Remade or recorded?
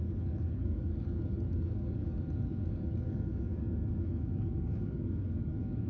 remade